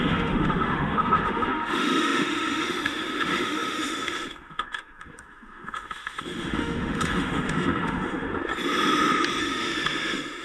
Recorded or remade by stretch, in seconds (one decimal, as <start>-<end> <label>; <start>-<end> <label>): 0.0-8.5 remade; 8.5-9.4 recorded; 9.4-10.4 remade